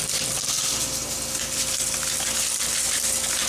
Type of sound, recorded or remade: recorded